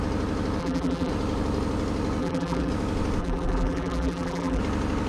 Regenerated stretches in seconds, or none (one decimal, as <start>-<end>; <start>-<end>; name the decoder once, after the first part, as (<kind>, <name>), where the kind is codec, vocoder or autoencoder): 0.6-1.1 (vocoder, BigVGAN v2); 2.2-2.7; 3.2-4.6

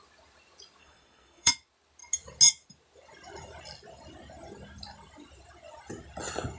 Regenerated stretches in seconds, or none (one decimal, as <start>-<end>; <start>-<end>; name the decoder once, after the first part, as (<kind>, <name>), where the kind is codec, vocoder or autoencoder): 0.8-1.5 (codec, SNAC)

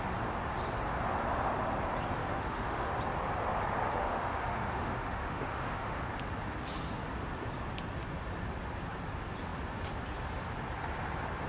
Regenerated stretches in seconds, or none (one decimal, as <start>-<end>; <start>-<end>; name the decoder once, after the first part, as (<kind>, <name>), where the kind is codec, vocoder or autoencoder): 2.2-2.9 (autoencoder, DAC-VAE); 4.0-6.0

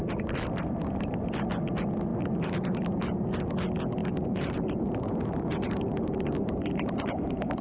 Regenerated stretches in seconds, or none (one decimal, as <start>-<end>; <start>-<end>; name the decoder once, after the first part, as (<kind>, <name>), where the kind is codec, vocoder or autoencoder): 2.1-3.2 (vocoder, BigVGAN v2); 4.0-7.6

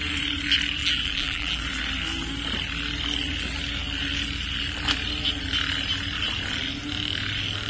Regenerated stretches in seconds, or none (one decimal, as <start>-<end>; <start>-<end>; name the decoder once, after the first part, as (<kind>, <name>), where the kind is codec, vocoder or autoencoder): 0.8-1.6 (vocoder, BigVGAN v2)

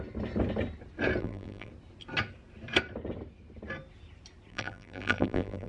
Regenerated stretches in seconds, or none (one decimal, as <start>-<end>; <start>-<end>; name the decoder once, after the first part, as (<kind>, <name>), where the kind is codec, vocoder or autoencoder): 1.2-1.7 (vocoder, BigVGAN v2); 4.5-5.7

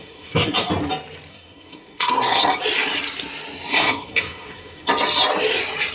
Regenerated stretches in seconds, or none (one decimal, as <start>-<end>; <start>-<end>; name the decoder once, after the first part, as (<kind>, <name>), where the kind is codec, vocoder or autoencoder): 0.0-0.7 (codec, SNAC); 1.3-2.4; 3.7-4.9

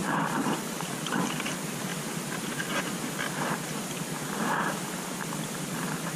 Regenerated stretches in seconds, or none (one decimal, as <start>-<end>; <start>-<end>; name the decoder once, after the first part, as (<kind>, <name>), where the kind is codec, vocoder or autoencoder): 0.0-1.9 (vocoder, BigVGAN v2); 5.6-6.2